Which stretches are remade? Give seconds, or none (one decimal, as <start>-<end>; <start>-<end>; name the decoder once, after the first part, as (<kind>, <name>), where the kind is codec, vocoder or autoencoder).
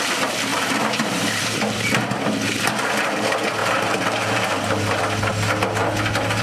0.5-1.6 (vocoder, BigVGAN v2); 3.6-5.0